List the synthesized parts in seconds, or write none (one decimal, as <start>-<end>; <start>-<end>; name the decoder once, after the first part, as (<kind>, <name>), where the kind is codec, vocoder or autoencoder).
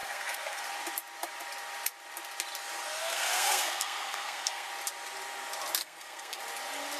0.0-0.6 (codec, SNAC); 3.0-4.7; 5.8-6.4